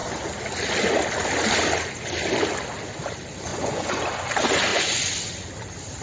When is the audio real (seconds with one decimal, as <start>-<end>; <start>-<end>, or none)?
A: 0.0-3.5; 4.0-4.7; 5.2-6.0